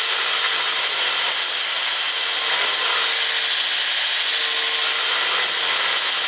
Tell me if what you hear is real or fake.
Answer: real